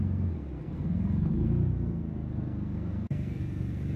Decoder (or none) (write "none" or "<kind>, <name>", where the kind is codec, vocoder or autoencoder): codec, SNAC